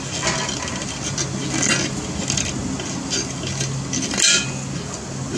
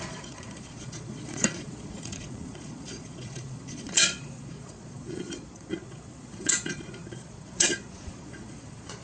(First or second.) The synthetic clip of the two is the second